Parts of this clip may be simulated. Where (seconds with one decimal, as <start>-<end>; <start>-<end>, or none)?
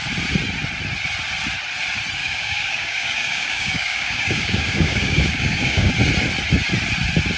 2.2-5.9